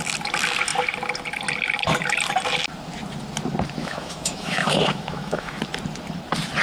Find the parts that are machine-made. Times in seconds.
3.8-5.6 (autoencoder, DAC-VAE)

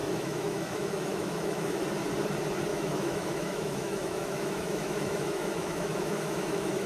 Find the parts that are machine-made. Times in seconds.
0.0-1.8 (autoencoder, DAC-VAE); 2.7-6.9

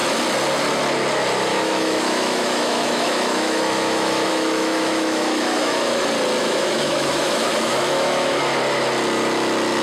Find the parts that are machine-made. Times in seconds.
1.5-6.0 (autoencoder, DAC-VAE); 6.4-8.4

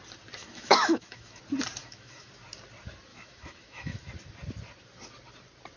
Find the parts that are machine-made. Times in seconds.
0.4-1.4 (autoencoder, DAC-VAE); 1.8-2.3; 3.1-4.1

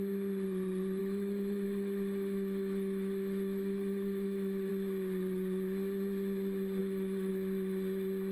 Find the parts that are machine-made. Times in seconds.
1.0-4.7 (autoencoder, DAC-VAE); 6.8-7.3